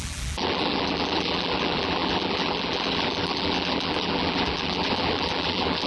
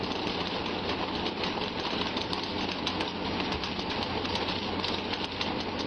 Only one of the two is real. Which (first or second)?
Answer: second